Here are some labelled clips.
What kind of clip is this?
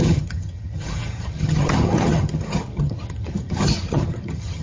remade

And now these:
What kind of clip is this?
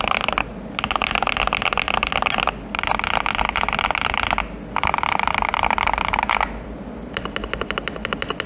recorded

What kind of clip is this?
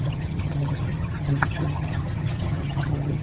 remade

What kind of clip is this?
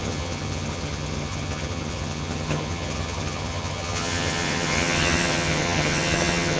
remade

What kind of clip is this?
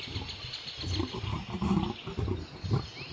recorded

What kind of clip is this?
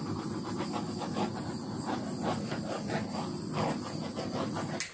recorded